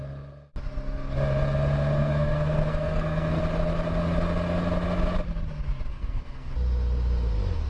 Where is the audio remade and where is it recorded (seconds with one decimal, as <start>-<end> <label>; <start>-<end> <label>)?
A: 0.0-2.0 recorded; 2.0-3.4 remade; 3.4-5.9 recorded; 5.9-6.5 remade; 6.5-7.7 recorded